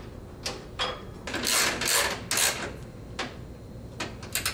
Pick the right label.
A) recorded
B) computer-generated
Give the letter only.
A